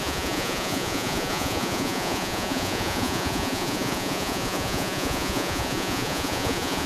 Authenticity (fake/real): fake